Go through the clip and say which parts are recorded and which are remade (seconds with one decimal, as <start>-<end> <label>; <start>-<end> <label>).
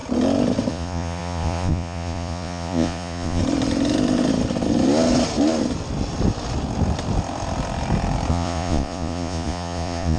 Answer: 0.0-0.7 recorded; 0.7-3.4 remade; 3.4-8.3 recorded; 8.3-10.2 remade